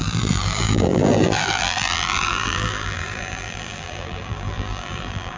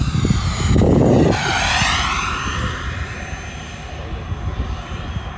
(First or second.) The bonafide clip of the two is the second